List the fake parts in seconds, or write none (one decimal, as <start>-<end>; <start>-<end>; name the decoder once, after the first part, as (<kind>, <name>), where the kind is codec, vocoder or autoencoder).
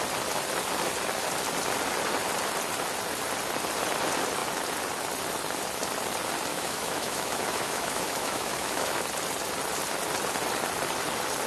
6.5-9.0 (autoencoder, DAC-VAE)